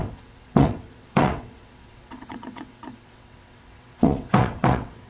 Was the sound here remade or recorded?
remade